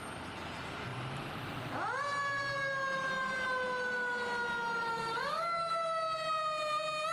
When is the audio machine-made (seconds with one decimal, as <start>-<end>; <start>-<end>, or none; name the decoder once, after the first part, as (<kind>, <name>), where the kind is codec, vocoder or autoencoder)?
4.9-5.7 (codec, DAC)